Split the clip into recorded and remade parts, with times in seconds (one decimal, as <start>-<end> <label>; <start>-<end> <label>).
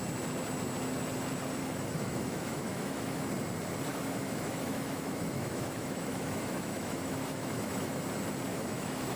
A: 0.0-1.6 recorded; 1.6-3.3 remade; 3.3-3.9 recorded; 3.9-8.0 remade; 8.0-8.5 recorded; 8.5-9.2 remade